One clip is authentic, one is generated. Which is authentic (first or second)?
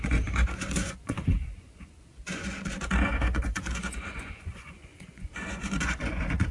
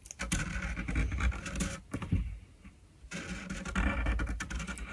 second